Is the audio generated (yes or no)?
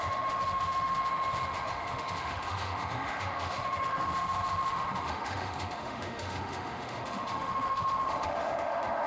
yes